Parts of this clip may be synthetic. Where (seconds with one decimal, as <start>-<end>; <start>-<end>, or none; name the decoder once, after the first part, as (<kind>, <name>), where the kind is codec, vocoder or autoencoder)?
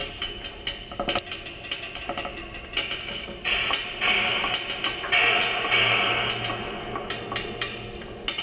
none